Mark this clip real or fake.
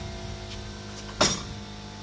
real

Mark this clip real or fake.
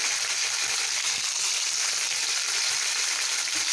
real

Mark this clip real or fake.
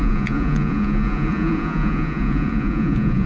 fake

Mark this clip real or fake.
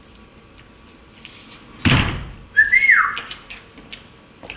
real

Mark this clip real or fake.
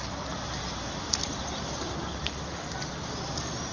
real